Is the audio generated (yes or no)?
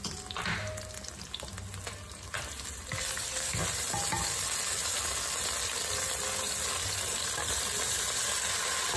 no